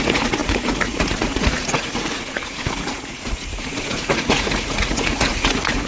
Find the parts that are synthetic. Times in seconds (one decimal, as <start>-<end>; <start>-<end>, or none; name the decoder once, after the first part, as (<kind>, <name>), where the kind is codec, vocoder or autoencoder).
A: 0.0-5.9 (vocoder, Vocos)